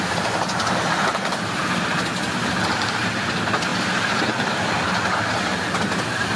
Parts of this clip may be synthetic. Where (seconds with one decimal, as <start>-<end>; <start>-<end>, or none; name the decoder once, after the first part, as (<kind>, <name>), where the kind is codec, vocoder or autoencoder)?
none